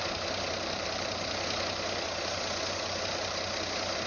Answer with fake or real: real